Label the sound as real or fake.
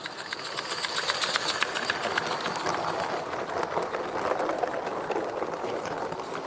real